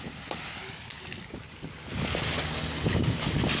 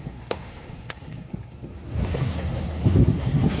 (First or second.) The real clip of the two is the first